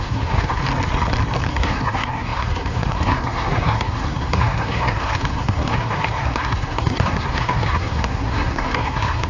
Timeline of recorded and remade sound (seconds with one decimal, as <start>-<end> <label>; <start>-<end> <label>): 0.0-0.6 remade; 0.6-1.5 recorded; 1.5-9.3 remade